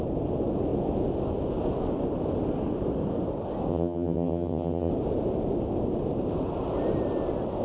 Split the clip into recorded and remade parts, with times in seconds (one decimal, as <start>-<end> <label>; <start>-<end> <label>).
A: 0.0-3.7 recorded; 3.7-4.9 remade; 4.9-7.6 recorded